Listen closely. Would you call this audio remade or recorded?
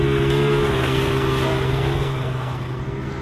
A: remade